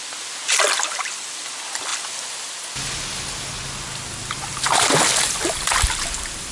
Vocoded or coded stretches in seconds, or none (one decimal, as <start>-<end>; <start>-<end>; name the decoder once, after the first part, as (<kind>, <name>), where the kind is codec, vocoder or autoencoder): none